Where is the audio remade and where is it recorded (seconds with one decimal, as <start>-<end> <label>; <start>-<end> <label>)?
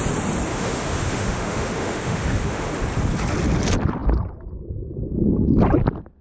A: 0.0-0.5 recorded; 0.5-2.7 remade; 2.7-6.2 recorded